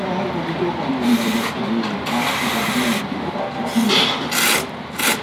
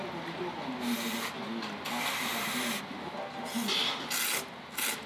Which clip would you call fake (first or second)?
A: first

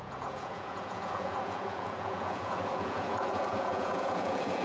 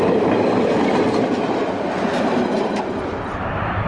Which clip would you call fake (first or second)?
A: first